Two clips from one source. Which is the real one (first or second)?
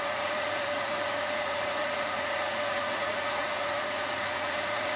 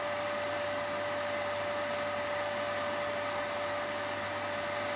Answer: second